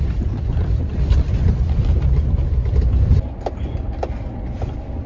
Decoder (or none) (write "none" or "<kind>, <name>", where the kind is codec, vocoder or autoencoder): none